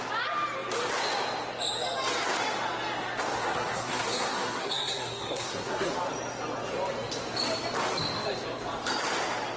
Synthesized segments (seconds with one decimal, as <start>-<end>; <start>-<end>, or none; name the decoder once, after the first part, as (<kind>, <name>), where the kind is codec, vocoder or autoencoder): 3.4-5.9 (codec, SNAC)